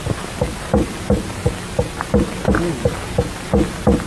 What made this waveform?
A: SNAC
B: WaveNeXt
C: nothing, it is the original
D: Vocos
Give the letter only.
C